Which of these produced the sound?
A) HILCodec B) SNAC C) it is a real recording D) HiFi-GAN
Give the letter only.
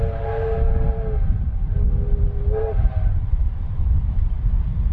C